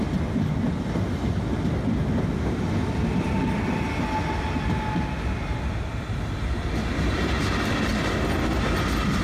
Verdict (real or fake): real